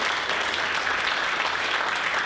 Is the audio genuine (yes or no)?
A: yes